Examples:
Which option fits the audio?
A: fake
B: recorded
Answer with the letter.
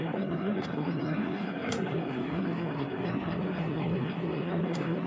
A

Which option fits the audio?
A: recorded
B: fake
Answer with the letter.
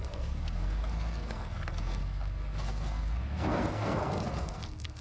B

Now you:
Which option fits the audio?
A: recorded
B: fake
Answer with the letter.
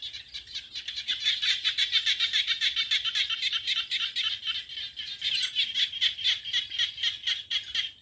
A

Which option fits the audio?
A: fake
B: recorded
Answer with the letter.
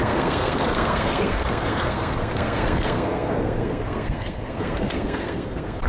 A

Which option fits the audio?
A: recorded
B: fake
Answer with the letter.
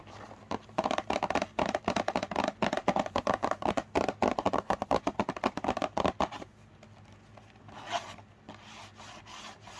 A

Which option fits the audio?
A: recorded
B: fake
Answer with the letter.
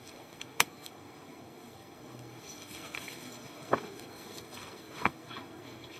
B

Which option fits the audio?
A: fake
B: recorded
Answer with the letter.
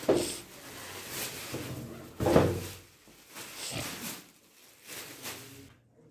B